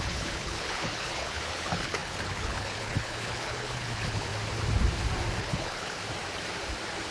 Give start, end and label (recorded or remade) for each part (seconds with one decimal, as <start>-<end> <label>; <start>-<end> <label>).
0.0-4.3 remade; 4.3-5.4 recorded; 5.4-6.0 remade; 6.0-7.1 recorded